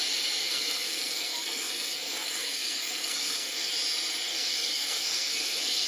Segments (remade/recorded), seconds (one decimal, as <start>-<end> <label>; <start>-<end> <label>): 0.0-0.4 recorded; 0.4-3.7 remade; 3.7-4.3 recorded; 4.3-5.9 remade